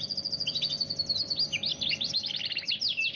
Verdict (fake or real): real